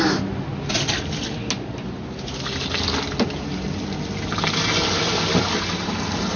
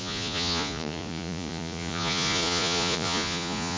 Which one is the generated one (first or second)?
second